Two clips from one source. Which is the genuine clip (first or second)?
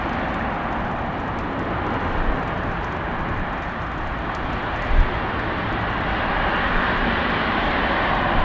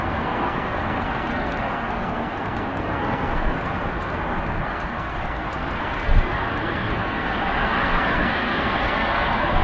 first